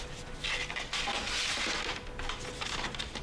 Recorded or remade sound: recorded